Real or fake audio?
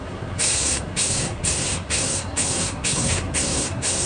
fake